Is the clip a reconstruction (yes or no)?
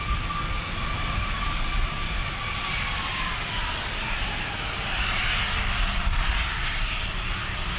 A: no